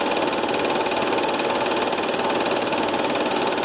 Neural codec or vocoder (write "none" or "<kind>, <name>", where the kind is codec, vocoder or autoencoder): none